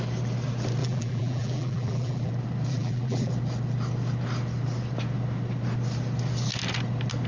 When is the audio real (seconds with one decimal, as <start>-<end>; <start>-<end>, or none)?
0.0-0.8; 2.3-2.7; 3.3-7.3